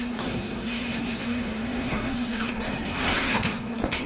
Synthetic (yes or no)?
yes